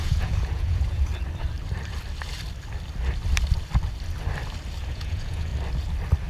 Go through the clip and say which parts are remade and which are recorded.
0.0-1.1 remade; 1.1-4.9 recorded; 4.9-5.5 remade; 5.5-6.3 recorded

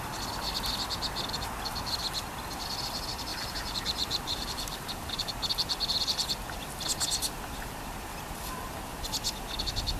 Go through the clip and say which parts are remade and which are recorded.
0.0-3.3 recorded; 3.3-5.3 remade; 5.3-10.0 recorded

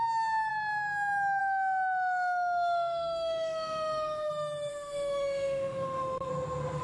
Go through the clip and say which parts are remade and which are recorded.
0.0-1.4 recorded; 1.4-4.3 remade; 4.3-4.7 recorded; 4.7-6.3 remade; 6.3-6.8 recorded

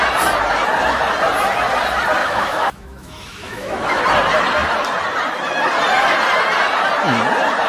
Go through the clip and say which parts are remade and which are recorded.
0.0-2.2 recorded; 2.2-4.0 remade; 4.0-7.7 recorded

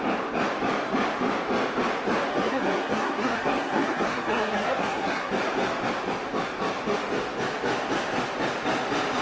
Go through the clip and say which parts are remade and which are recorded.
0.0-2.3 recorded; 2.3-5.3 remade; 5.3-9.2 recorded